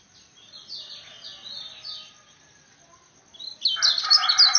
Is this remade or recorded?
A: recorded